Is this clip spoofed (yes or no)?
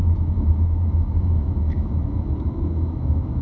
yes